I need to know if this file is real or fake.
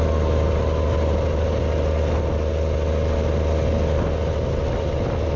real